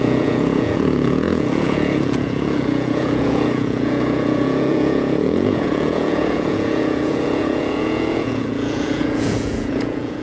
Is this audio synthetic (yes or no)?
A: yes